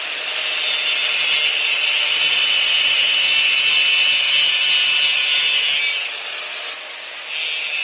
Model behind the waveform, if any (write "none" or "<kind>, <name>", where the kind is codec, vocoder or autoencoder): none